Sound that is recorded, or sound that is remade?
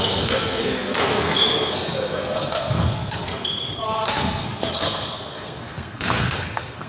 remade